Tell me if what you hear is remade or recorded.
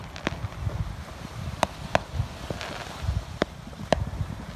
recorded